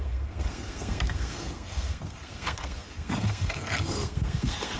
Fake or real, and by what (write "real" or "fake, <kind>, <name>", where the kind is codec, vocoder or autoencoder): fake, codec, SNAC